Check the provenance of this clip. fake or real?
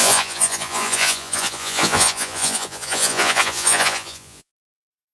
fake